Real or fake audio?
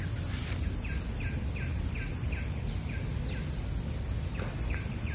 real